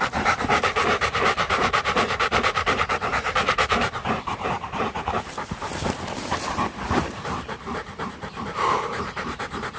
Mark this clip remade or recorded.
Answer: remade